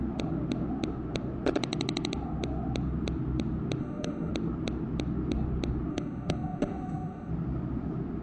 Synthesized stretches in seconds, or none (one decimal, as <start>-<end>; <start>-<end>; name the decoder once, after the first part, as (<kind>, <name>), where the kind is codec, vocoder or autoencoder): 3.8-4.3 (autoencoder, DAC-VAE); 5.9-7.3